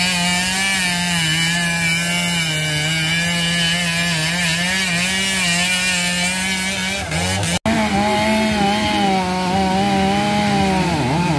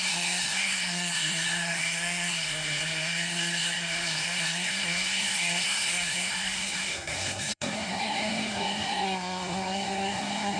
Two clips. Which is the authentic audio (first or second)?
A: first